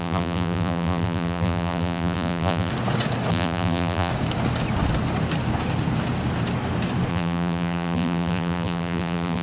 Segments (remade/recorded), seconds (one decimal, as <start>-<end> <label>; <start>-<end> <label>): 0.0-2.7 remade; 2.7-3.3 recorded; 3.3-4.1 remade; 4.1-7.1 recorded; 7.1-9.4 remade